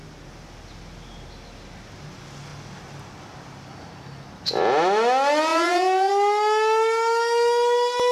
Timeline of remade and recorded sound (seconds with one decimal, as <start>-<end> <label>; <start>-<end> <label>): 0.0-5.5 recorded; 5.5-6.1 remade; 6.1-8.1 recorded